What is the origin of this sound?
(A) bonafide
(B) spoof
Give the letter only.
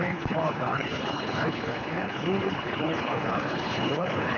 B